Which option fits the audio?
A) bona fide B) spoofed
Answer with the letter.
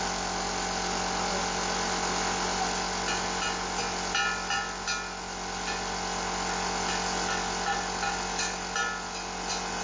A